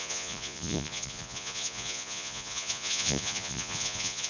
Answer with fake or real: fake